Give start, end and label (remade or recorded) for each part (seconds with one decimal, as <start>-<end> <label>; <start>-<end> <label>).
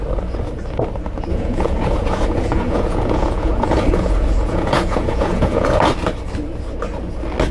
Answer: 0.0-1.3 recorded; 1.3-5.8 remade; 5.8-7.5 recorded